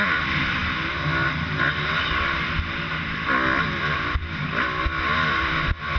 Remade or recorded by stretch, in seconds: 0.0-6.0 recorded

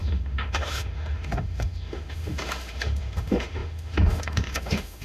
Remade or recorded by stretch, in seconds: 0.0-5.0 remade